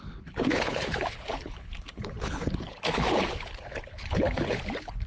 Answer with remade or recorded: remade